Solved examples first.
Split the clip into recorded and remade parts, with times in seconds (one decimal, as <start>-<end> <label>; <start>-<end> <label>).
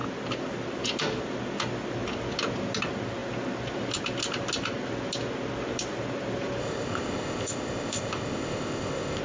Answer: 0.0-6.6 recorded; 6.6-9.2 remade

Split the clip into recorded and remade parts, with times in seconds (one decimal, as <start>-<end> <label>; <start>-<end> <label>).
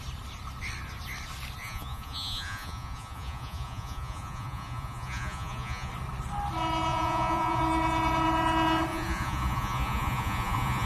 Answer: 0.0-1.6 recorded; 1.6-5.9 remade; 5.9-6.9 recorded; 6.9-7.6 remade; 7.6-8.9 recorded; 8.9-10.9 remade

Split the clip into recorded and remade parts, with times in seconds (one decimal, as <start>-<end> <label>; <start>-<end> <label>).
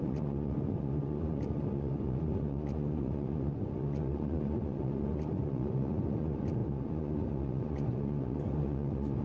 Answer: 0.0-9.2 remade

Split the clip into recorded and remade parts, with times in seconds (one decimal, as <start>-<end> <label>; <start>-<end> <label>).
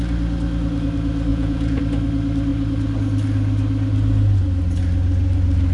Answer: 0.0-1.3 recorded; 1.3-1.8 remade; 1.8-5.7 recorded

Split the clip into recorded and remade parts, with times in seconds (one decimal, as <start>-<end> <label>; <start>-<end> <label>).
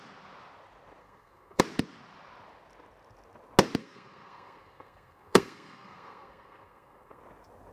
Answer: 0.0-1.0 recorded; 1.0-1.6 remade; 1.6-3.8 recorded; 3.8-7.2 remade; 7.2-7.7 recorded